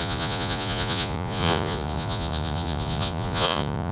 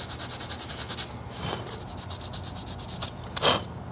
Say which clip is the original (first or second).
second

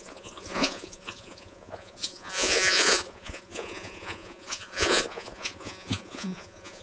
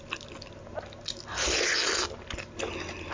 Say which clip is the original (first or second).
second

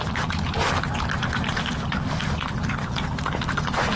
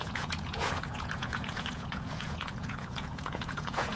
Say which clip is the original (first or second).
first